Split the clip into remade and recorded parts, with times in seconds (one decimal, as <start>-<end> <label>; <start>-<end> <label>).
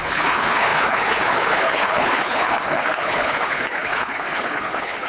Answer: 0.0-5.1 remade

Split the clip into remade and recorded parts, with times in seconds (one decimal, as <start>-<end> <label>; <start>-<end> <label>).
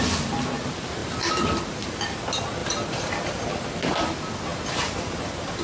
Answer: 0.0-2.6 recorded; 2.6-3.6 remade; 3.6-4.5 recorded; 4.5-5.6 remade